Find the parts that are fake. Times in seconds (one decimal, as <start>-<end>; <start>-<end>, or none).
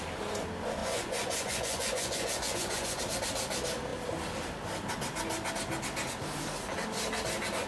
0.8-3.0